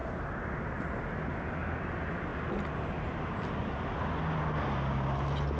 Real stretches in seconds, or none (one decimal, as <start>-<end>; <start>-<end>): 0.0-5.6

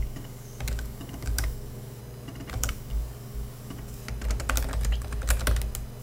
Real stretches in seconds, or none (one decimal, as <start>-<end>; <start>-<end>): 2.0-2.5; 4.0-6.0

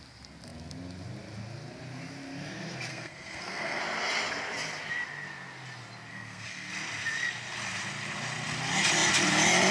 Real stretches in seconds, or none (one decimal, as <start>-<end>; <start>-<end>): 0.0-2.9; 3.8-6.1; 6.7-9.7

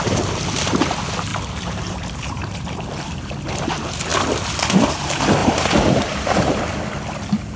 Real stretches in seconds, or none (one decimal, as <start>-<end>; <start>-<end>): 0.0-1.3; 3.3-5.4; 6.6-7.6